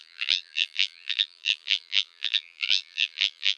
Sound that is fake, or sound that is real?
fake